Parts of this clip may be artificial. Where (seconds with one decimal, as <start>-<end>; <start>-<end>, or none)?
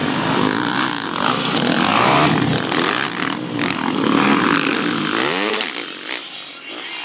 1.9-3.4; 4.7-6.5